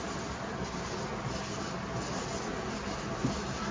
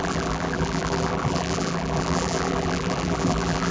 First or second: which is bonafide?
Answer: first